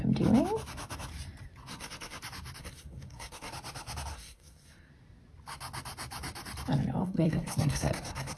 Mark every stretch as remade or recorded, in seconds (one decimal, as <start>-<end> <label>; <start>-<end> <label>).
0.0-1.7 recorded; 1.7-2.2 remade; 2.2-2.6 recorded; 2.6-3.5 remade; 3.5-4.1 recorded; 4.1-4.9 remade; 4.9-7.0 recorded; 7.0-8.4 remade